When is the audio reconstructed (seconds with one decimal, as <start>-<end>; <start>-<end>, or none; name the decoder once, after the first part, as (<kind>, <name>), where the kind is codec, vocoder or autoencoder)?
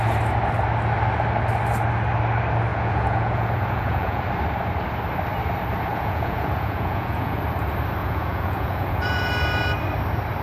2.7-4.3 (vocoder, Vocos); 5.9-7.4; 8.0-9.3